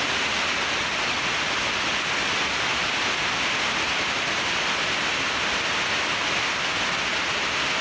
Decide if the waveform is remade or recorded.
recorded